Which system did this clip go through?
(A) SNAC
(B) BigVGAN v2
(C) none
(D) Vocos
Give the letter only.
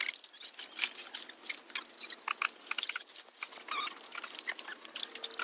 C